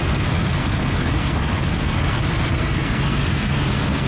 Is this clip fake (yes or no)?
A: yes